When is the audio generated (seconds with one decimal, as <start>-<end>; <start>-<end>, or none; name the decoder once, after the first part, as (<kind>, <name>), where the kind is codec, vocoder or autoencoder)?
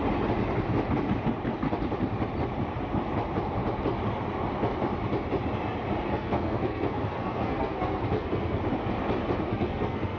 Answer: 6.1-8.6 (codec, SNAC); 9.5-10.2